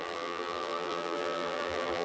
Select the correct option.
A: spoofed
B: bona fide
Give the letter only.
A